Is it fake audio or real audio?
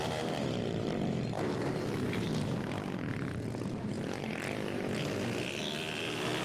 real